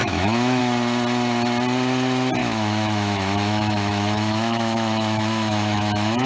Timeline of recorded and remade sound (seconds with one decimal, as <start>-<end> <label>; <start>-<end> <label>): 0.0-0.6 remade; 0.6-2.4 recorded; 2.4-6.3 remade